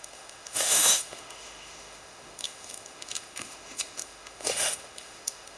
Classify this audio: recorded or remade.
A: remade